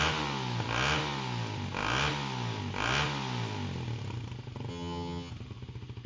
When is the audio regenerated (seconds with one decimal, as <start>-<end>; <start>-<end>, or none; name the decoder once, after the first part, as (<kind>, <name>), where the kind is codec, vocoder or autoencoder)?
4.7-5.3 (vocoder, HiFi-GAN)